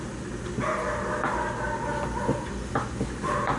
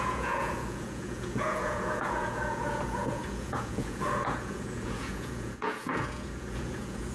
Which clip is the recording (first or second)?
first